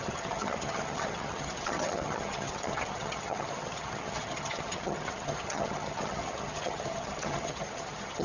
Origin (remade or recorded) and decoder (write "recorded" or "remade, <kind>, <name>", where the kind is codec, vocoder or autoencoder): remade, vocoder, HiFi-GAN